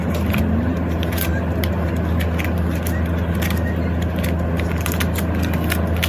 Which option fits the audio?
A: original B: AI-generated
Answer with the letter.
A